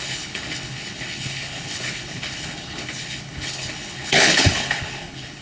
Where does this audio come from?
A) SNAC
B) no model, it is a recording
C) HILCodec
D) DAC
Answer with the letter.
C